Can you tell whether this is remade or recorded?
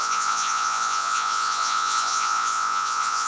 remade